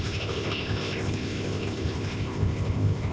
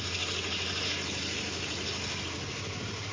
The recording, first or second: second